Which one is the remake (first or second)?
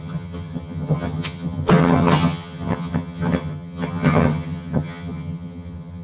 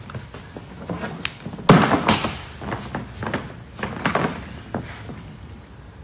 first